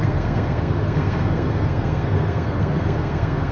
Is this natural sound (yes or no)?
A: no